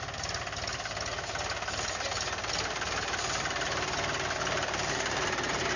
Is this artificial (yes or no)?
no